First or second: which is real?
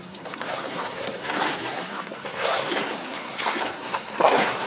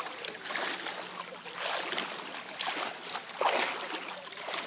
second